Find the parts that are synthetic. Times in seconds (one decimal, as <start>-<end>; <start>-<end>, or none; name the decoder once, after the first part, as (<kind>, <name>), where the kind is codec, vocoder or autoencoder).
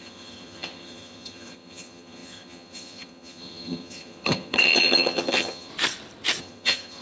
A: 0.0-5.7 (vocoder, HiFi-GAN); 6.4-7.0